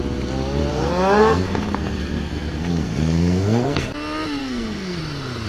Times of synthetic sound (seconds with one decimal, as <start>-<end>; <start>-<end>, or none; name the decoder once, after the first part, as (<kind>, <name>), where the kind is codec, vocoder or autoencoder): 0.7-3.9 (codec, SNAC); 4.4-5.0